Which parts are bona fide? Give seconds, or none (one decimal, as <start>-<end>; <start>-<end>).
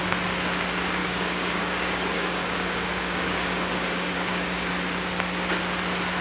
0.0-1.0; 4.7-6.2